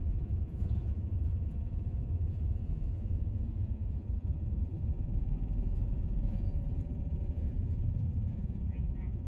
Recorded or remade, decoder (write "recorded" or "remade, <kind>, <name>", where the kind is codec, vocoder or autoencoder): remade, vocoder, Vocos